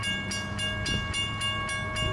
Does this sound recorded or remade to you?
recorded